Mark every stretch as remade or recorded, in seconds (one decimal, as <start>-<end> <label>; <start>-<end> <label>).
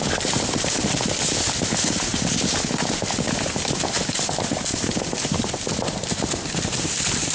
0.0-7.3 recorded